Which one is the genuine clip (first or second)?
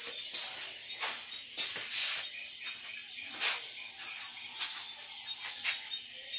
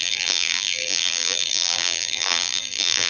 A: first